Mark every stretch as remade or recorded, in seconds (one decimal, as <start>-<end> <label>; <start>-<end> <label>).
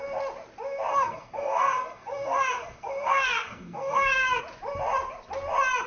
0.0-0.9 recorded; 0.9-4.4 remade; 4.4-5.9 recorded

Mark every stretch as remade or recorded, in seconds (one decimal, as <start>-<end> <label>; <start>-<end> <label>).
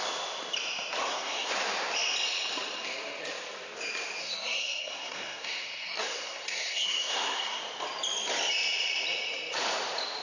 0.0-1.0 recorded; 1.0-1.5 remade; 1.5-4.2 recorded; 4.2-7.6 remade; 7.6-10.2 recorded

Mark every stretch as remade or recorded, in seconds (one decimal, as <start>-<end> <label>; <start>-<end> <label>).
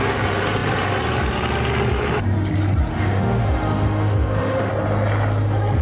0.0-2.9 recorded; 2.9-4.7 remade; 4.7-5.8 recorded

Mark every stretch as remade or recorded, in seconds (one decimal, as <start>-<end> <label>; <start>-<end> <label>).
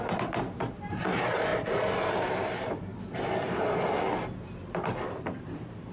0.0-2.9 remade; 2.9-4.7 recorded; 4.7-5.9 remade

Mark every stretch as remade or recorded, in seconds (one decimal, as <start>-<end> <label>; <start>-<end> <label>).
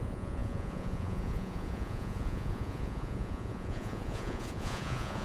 0.0-5.2 remade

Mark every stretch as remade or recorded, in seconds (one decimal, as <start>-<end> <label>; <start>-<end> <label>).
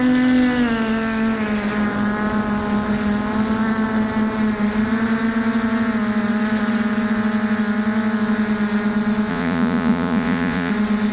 0.0-9.3 recorded; 9.3-10.7 remade; 10.7-11.1 recorded